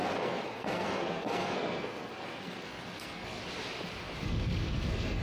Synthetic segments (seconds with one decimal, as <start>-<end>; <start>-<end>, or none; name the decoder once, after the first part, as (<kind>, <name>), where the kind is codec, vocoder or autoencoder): 0.0-3.4 (codec, SNAC); 4.2-5.2